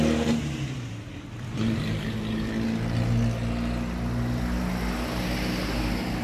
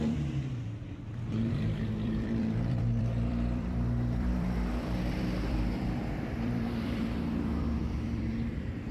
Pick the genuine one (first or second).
first